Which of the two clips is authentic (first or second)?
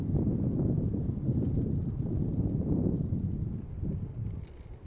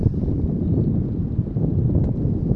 second